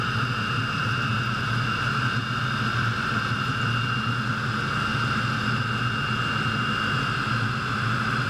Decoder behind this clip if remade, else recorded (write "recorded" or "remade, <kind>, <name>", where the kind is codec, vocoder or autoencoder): recorded